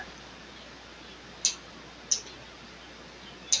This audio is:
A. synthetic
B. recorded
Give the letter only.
B